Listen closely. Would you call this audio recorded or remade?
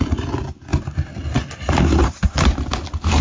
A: recorded